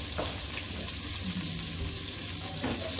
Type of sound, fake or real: real